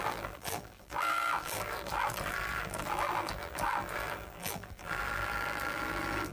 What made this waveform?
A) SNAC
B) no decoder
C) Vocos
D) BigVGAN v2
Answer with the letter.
D